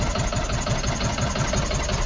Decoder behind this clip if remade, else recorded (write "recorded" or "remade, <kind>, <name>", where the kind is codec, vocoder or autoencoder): recorded